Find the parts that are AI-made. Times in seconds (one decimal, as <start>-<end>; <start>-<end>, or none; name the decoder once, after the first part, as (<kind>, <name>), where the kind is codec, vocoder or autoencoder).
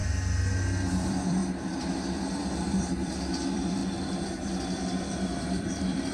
0.9-3.8 (vocoder, BigVGAN v2); 5.1-6.1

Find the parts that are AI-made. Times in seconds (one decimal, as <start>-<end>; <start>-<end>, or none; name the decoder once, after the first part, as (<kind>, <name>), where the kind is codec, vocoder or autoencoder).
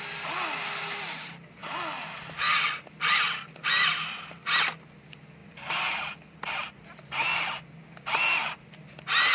none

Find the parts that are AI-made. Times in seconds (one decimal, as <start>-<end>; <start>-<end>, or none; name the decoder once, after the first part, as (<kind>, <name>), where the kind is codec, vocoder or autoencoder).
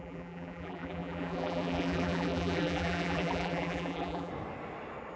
0.0-4.3 (vocoder, BigVGAN v2)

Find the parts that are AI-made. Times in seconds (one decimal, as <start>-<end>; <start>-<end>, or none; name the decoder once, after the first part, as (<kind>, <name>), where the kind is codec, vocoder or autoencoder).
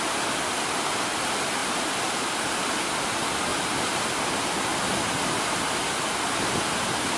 3.5-4.2 (vocoder, BigVGAN v2)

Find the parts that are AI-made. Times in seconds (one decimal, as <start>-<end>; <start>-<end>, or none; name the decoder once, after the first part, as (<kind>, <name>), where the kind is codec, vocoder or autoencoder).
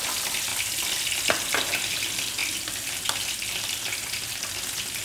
none